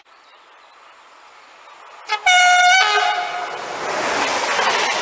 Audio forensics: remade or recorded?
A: recorded